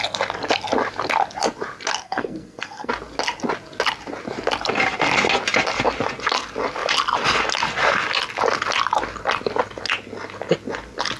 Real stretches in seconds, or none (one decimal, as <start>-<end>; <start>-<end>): 0.0-2.0; 2.9-11.2

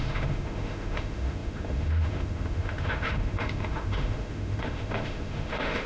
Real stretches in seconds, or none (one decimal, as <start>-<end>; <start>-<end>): none